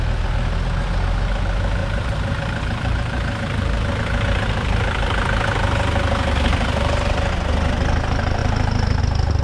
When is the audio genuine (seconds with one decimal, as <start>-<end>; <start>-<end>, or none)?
0.0-1.8; 4.0-6.5; 7.3-9.4